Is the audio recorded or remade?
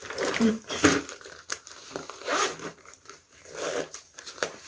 remade